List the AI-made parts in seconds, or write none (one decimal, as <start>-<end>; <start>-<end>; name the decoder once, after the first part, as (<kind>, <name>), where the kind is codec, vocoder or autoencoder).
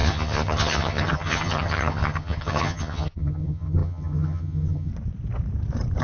0.0-4.9 (vocoder, HiFi-GAN)